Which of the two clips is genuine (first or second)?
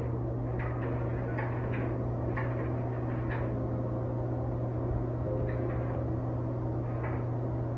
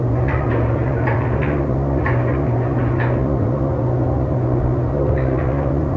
first